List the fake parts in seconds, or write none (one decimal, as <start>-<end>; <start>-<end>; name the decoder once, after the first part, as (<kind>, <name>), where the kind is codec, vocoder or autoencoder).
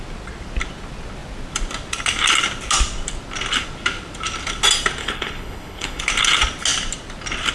5.0-6.0 (codec, HILCodec)